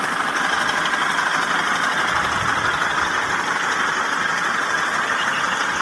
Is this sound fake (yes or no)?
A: no